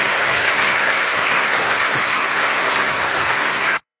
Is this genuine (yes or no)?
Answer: no